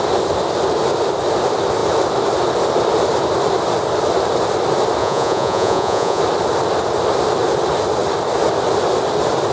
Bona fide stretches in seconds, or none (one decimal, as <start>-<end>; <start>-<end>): 0.0-5.0; 6.2-9.5